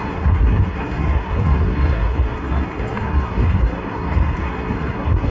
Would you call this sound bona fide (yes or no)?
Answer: no